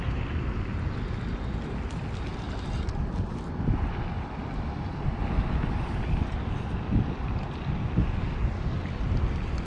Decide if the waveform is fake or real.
real